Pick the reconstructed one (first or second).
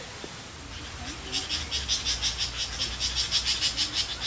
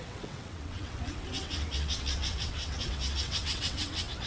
second